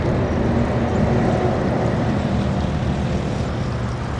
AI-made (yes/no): no